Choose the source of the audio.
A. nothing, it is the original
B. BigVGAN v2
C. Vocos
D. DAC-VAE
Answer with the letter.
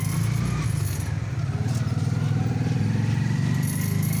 A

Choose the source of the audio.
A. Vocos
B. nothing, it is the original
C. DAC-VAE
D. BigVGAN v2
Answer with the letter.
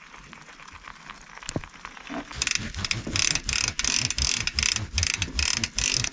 B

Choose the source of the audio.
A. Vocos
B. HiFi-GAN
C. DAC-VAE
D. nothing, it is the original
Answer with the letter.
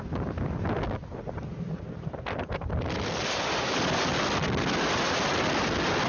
D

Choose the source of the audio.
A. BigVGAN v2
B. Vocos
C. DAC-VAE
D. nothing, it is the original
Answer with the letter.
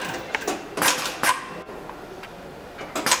D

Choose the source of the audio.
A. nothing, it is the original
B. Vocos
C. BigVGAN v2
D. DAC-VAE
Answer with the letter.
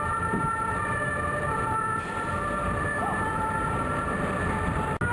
A